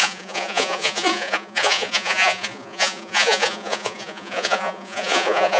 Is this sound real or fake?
fake